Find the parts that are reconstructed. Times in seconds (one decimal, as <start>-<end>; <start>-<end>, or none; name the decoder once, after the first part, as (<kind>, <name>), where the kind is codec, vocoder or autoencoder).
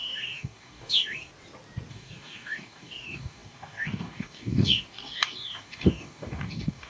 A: 0.0-1.3 (codec, DAC); 1.9-6.9